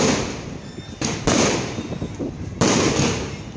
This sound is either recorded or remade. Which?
recorded